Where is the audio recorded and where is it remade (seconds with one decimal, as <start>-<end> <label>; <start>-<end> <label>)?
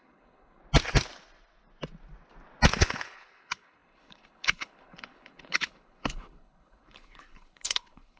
0.0-0.6 remade; 0.6-2.8 recorded; 2.8-8.2 remade